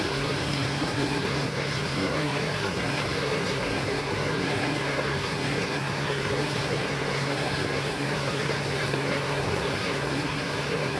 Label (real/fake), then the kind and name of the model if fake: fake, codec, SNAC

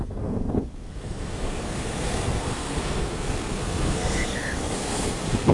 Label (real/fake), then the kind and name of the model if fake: fake, codec, SNAC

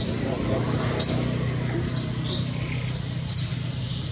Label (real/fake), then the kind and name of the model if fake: real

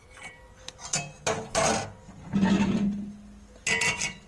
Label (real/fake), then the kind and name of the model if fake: real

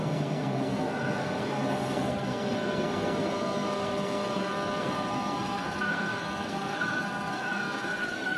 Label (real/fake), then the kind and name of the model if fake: fake, codec, SNAC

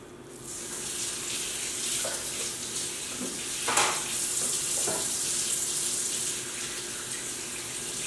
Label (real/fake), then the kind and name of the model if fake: real